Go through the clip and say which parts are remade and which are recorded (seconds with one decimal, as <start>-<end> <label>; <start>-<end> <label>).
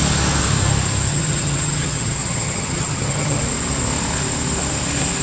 0.0-1.1 recorded; 1.1-3.4 remade; 3.4-5.2 recorded